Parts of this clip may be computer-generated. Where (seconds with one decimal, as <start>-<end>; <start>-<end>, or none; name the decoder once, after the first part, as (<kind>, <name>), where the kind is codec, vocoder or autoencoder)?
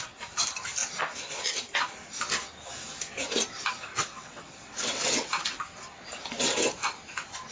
3.9-5.4 (vocoder, WaveNeXt)